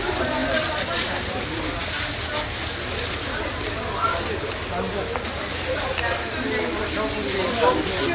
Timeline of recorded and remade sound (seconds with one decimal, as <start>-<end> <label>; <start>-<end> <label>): 0.0-8.1 recorded